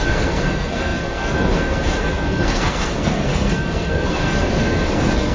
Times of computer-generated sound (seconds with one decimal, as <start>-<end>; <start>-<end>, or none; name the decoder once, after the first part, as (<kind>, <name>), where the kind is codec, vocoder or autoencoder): 0.0-5.3 (codec, SNAC)